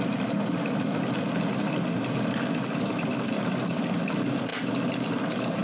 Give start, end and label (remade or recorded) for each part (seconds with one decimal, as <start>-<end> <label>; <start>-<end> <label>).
0.0-5.6 recorded